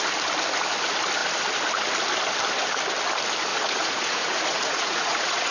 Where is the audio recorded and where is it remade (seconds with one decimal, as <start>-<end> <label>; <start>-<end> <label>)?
0.0-3.5 recorded; 3.5-5.5 remade